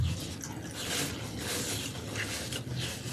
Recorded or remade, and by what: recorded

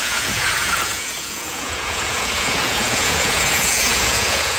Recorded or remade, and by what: remade, vocoder, Vocos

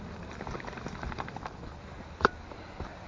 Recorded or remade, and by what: recorded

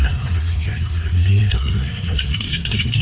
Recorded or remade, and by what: remade, codec, SNAC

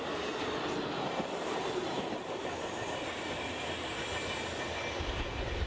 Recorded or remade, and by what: recorded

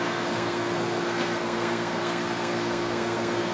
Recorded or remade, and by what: remade, codec, SNAC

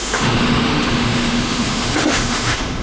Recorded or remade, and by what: remade, autoencoder, DAC-VAE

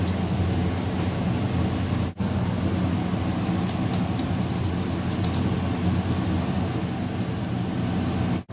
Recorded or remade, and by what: recorded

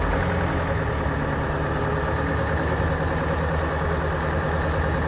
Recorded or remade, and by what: recorded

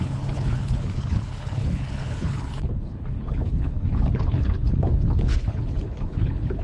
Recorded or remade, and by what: remade, codec, HILCodec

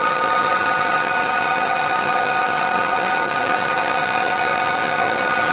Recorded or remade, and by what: remade, vocoder, HiFi-GAN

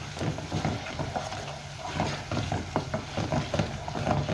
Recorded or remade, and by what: recorded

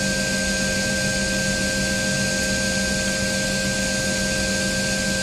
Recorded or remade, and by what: recorded